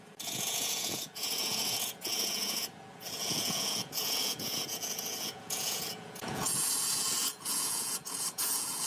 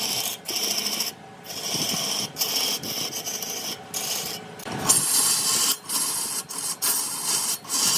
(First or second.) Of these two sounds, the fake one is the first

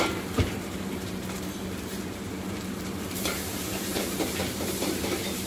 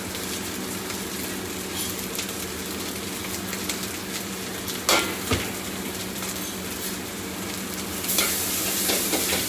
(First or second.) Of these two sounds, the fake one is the first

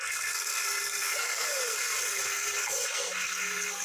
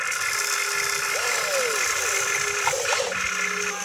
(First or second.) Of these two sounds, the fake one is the first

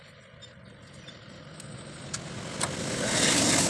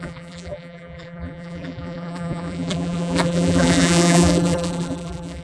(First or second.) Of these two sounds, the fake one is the second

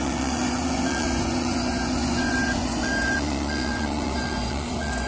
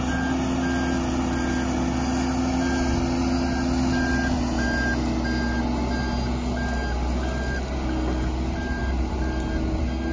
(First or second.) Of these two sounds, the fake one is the first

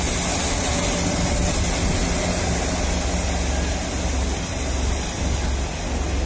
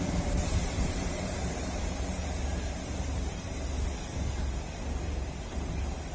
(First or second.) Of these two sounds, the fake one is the second